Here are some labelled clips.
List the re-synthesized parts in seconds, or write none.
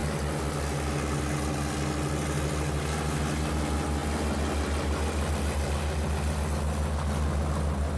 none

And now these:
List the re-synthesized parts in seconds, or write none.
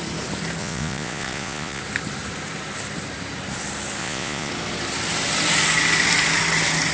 0.6-1.8; 4.0-4.5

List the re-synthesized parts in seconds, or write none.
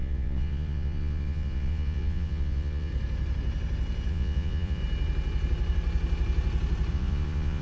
0.0-2.9; 4.1-4.8; 6.9-7.6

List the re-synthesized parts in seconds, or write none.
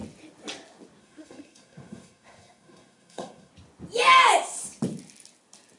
1.0-3.5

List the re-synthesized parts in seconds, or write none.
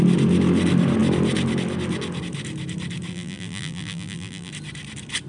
3.1-4.5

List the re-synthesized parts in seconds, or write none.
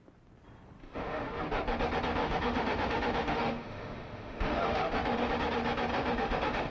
0.8-1.4; 2.2-5.3; 5.9-6.7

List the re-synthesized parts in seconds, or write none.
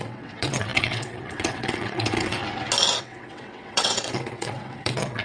0.0-2.4; 3.0-5.2